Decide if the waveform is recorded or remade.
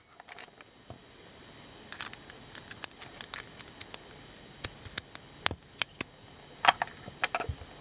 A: recorded